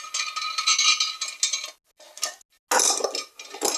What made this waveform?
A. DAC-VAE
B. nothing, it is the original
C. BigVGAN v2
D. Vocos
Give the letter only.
B